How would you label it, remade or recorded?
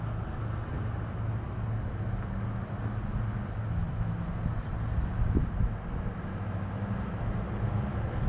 recorded